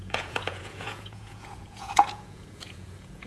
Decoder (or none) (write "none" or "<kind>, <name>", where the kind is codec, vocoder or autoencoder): vocoder, Vocos